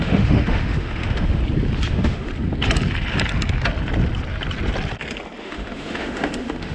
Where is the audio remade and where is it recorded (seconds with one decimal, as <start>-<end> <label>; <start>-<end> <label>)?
0.0-1.4 remade; 1.4-1.9 recorded; 1.9-2.3 remade; 2.3-5.4 recorded; 5.4-6.7 remade